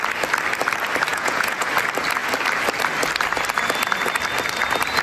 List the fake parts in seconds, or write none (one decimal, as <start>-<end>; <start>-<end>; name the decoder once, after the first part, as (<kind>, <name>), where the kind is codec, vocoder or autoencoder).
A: 1.1-1.7 (vocoder, Vocos)